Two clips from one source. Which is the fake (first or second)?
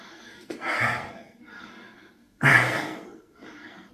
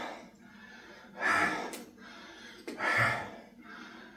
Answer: first